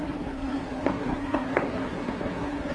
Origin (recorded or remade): remade